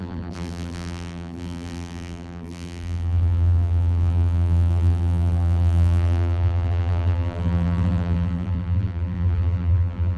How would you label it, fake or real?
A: fake